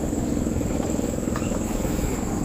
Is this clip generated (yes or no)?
yes